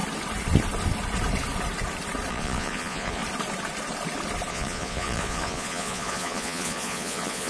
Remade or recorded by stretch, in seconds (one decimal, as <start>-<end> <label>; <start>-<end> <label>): 0.0-2.3 recorded; 2.3-3.2 remade; 3.2-4.5 recorded; 4.5-7.5 remade